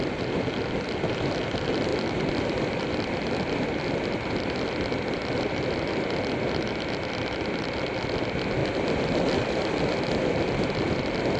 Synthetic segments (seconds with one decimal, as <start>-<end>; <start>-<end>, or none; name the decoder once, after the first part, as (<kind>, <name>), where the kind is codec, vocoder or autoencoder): 1.9-6.6 (vocoder, BigVGAN v2); 8.6-9.8